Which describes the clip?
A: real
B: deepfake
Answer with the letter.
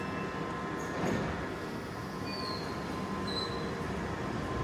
A